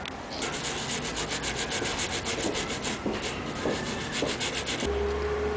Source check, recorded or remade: recorded